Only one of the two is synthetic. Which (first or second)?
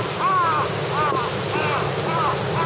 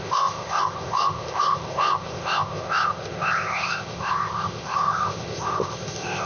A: second